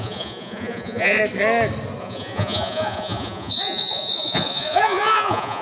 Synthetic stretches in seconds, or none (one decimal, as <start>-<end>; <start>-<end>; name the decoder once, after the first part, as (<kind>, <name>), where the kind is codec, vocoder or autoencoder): 0.0-1.2 (vocoder, Vocos); 2.0-5.6